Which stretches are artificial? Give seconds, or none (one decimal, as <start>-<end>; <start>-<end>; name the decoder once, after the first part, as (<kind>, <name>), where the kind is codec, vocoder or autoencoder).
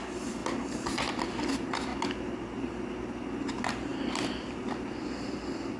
none